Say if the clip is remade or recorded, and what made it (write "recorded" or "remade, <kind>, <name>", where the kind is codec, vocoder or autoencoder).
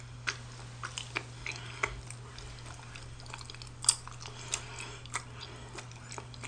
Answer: recorded